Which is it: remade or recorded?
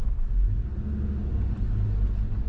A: recorded